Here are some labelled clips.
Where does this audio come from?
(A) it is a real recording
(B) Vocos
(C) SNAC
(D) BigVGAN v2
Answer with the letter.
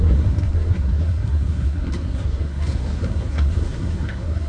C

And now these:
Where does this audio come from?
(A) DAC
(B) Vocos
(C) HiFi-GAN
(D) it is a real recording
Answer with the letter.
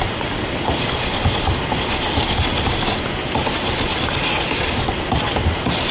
D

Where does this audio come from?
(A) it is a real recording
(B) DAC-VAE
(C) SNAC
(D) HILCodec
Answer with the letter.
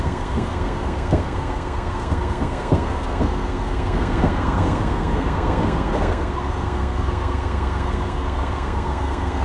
C